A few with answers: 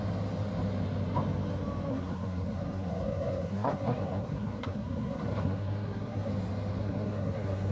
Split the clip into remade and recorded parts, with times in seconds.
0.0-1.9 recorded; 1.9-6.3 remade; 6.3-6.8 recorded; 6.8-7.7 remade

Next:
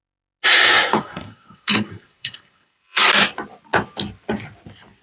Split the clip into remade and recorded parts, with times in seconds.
0.0-1.0 recorded; 1.0-3.1 remade; 3.1-5.0 recorded

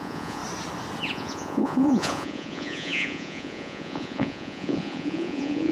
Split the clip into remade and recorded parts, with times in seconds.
0.0-0.4 remade; 0.4-1.0 recorded; 1.0-5.7 remade